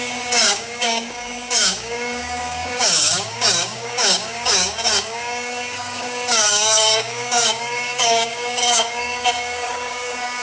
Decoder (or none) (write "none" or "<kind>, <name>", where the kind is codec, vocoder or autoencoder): codec, DAC